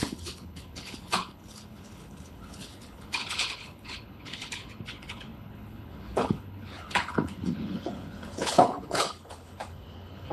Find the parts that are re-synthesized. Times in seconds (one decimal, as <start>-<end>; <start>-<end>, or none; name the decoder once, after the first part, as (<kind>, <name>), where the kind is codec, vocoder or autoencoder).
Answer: 0.0-10.3 (codec, HILCodec)